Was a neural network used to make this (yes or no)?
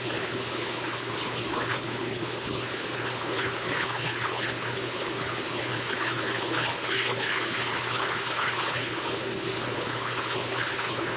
yes